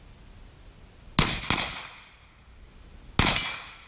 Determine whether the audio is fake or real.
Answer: real